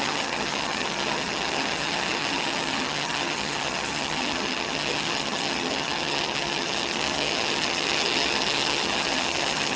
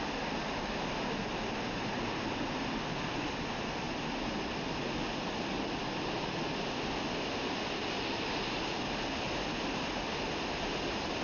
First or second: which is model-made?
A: first